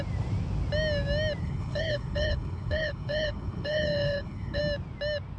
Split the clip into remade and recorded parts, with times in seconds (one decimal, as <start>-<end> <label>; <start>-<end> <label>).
0.0-1.4 recorded; 1.4-4.6 remade; 4.6-5.4 recorded